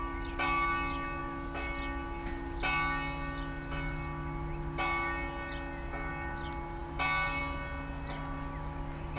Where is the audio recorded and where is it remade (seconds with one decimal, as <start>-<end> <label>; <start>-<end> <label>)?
0.0-9.2 recorded